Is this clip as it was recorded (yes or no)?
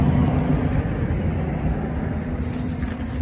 yes